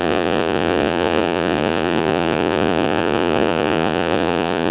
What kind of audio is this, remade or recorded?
remade